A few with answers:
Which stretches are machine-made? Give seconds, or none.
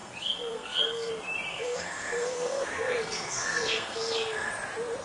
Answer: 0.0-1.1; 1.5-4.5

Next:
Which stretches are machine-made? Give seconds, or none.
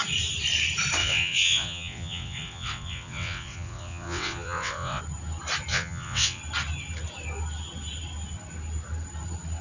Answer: 1.0-5.0; 5.7-6.4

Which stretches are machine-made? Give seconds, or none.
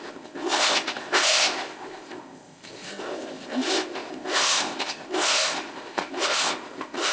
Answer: 0.0-7.1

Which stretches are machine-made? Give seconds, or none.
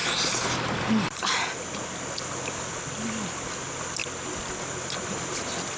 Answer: none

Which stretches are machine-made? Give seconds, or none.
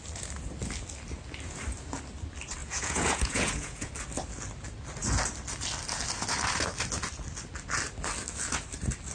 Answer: 2.6-3.9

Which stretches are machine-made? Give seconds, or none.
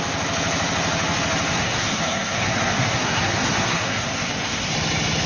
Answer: 1.5-4.7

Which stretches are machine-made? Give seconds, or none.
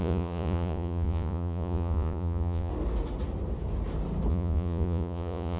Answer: 0.0-2.7; 4.3-5.6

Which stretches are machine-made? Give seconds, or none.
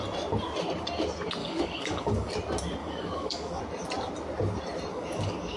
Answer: 1.4-2.3; 2.8-3.6; 4.9-5.6